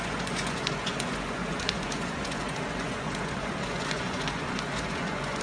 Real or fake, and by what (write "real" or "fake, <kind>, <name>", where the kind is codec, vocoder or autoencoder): fake, vocoder, Vocos